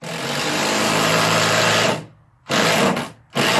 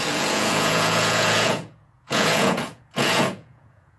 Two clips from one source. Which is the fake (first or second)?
second